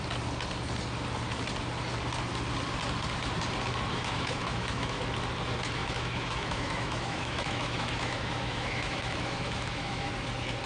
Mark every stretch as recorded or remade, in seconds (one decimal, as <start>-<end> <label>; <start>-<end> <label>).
0.0-3.9 recorded; 3.9-5.0 remade; 5.0-5.8 recorded; 5.8-10.1 remade; 10.1-10.7 recorded